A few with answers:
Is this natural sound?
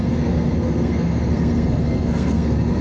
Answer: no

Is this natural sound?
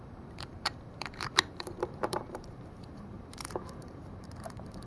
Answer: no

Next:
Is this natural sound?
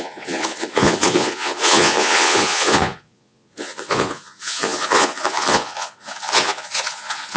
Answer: no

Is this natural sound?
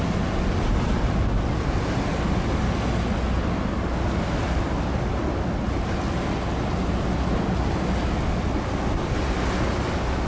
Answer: yes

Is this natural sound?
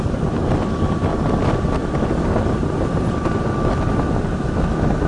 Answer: yes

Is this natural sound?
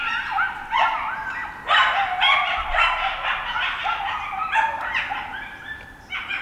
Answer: yes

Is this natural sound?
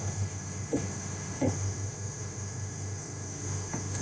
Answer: no